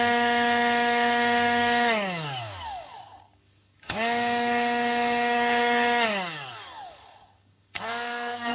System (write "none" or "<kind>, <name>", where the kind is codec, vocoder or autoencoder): codec, DAC